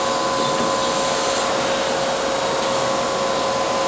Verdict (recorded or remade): recorded